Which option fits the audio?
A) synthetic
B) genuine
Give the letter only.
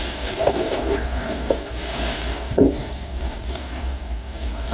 A